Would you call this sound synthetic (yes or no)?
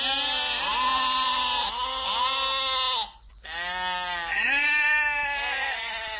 no